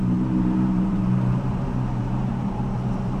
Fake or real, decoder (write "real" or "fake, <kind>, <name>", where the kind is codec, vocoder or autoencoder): fake, vocoder, BigVGAN v2